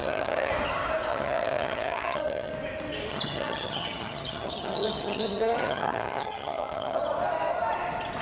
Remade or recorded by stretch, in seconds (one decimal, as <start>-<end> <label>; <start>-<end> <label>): 0.0-0.5 remade; 0.5-1.1 recorded; 1.1-2.5 remade; 2.5-3.1 recorded; 3.1-7.0 remade; 7.0-8.2 recorded